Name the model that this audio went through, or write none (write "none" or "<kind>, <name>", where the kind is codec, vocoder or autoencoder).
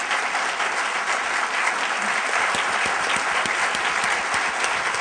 none